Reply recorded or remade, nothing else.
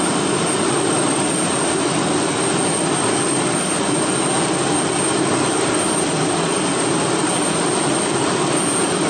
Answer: recorded